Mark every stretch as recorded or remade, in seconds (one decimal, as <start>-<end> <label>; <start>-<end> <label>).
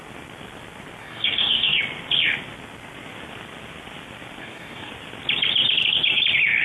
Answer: 0.0-1.0 recorded; 1.0-1.8 remade; 1.8-4.4 recorded; 4.4-4.9 remade; 4.9-6.6 recorded